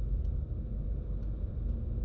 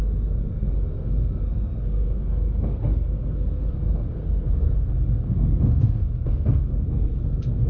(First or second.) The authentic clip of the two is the first